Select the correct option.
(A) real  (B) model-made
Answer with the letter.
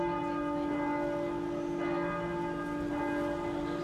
A